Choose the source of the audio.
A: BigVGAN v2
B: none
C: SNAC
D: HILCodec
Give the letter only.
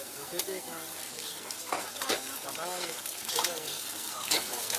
C